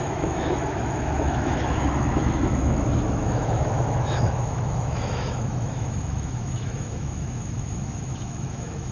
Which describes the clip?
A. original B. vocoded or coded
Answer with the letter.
B